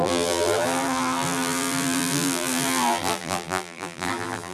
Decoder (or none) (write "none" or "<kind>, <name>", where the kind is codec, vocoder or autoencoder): vocoder, BigVGAN v2